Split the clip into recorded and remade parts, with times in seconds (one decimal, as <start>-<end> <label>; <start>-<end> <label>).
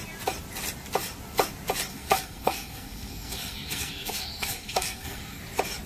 0.0-1.9 recorded; 1.9-5.4 remade; 5.4-5.9 recorded